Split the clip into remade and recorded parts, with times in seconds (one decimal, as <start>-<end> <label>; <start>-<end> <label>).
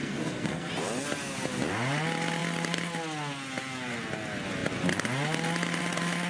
0.0-0.7 remade; 0.7-6.3 recorded